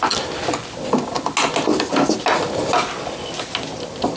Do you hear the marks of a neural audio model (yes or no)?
no